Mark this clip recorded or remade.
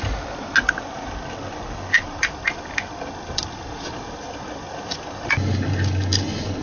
recorded